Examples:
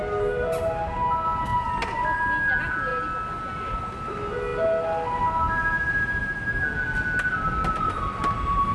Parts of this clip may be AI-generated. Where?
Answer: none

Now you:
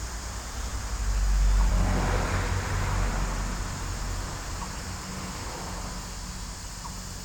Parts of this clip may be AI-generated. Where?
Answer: none

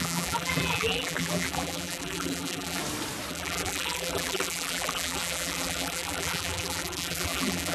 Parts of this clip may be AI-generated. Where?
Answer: 0.0-2.8; 3.3-7.7

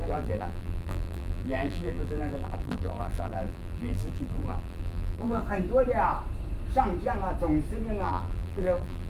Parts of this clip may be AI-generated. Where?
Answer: 0.0-5.4; 8.0-9.1

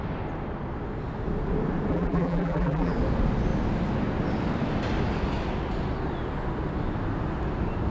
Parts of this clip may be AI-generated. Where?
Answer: 1.9-2.9

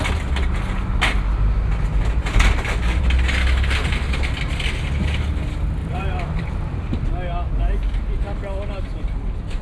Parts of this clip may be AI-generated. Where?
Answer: 2.0-3.0; 5.8-7.1

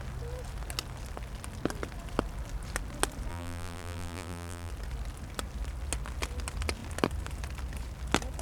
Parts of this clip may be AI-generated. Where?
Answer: 3.3-4.7

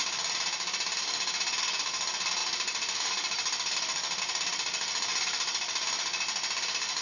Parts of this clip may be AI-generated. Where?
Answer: 2.4-4.2; 5.1-6.2